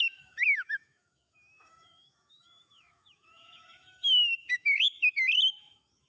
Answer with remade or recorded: remade